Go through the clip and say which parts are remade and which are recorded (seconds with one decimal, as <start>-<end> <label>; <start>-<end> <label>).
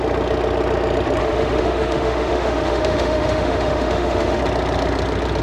0.0-1.2 recorded; 1.2-4.4 remade; 4.4-5.4 recorded